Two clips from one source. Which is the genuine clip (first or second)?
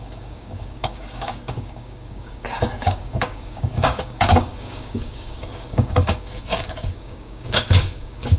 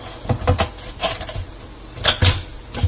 second